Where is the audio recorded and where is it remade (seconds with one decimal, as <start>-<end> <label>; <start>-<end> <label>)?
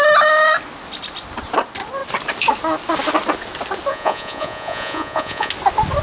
0.0-3.9 recorded; 3.9-5.5 remade; 5.5-6.0 recorded